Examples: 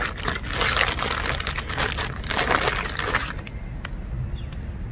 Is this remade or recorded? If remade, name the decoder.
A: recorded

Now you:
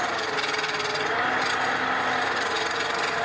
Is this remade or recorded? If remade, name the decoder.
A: recorded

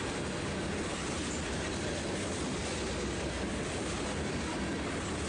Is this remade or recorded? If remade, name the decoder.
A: recorded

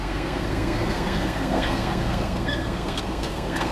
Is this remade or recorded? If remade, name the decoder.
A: remade, codec, SNAC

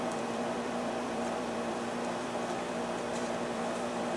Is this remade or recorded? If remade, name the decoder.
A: remade, vocoder, BigVGAN v2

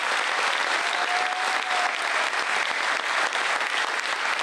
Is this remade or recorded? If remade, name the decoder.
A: recorded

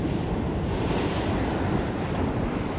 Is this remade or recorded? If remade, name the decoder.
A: recorded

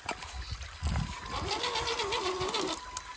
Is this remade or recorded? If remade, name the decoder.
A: recorded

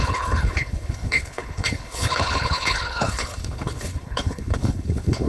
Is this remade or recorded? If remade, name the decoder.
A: remade, codec, HILCodec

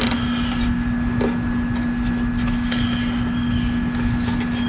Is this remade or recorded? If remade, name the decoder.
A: recorded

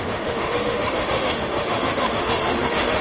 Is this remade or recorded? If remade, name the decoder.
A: remade, autoencoder, DAC-VAE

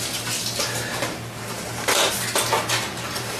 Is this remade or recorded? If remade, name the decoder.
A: recorded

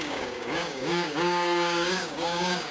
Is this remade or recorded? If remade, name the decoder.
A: remade, codec, DAC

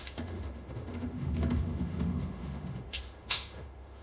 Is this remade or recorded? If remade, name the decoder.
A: remade, autoencoder, DAC-VAE